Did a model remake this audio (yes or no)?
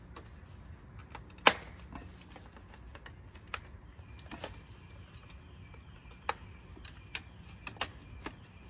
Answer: no